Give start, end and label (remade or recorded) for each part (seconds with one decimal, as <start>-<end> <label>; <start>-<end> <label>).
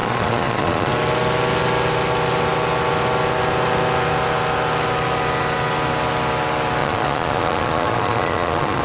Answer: 0.0-0.9 remade; 0.9-6.8 recorded; 6.8-8.8 remade